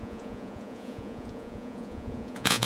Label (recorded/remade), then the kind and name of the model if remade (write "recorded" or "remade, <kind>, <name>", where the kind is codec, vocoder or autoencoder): remade, vocoder, Vocos